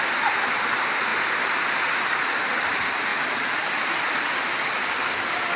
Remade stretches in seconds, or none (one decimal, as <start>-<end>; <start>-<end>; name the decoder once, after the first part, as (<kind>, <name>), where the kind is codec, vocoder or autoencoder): none